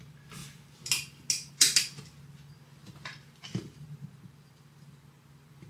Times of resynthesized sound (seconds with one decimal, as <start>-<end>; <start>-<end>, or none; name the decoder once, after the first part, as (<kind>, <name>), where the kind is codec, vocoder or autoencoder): 2.8-5.7 (vocoder, BigVGAN v2)